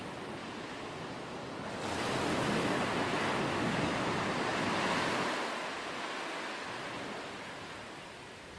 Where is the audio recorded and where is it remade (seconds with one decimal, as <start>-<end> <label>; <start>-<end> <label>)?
0.0-8.6 recorded